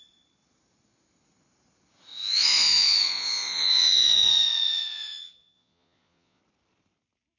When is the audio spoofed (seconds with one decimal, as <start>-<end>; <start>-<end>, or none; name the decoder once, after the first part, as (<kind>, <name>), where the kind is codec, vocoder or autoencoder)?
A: 2.1-6.4 (vocoder, Vocos)

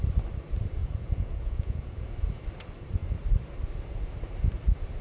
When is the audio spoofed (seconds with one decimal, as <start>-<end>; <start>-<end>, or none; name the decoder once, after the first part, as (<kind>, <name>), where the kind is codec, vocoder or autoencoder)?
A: 0.8-2.0 (vocoder, Vocos)

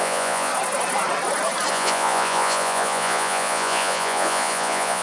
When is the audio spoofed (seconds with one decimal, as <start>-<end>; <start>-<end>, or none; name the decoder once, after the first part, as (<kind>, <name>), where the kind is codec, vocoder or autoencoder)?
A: 0.0-0.5 (vocoder, Vocos); 1.7-5.0

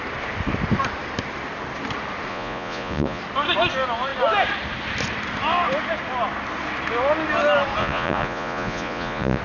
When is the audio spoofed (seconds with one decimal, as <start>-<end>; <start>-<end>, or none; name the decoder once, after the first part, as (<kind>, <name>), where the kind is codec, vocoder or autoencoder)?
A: 2.3-3.2 (vocoder, Vocos); 7.8-9.4

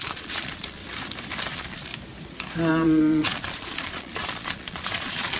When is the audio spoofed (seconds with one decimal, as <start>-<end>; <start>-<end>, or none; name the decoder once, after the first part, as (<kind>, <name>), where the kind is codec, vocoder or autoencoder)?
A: 0.0-0.8 (vocoder, Vocos); 1.5-1.9; 2.7-5.4